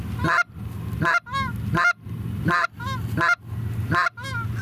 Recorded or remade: recorded